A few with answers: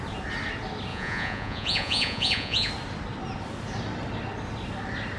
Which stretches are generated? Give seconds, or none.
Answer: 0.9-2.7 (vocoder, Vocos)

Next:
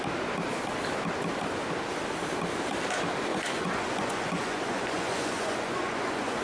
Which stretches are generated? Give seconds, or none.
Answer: 3.3-6.4 (vocoder, Vocos)

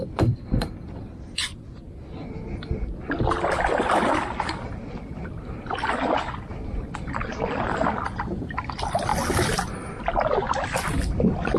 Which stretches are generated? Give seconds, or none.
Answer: 0.0-9.1 (vocoder, BigVGAN v2)

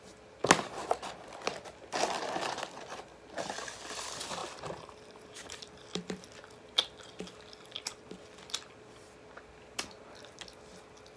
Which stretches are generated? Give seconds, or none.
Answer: 4.4-7.2 (vocoder, BigVGAN v2)